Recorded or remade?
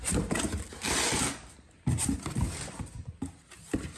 recorded